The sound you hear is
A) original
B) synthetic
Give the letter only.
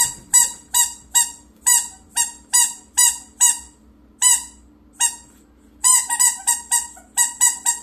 A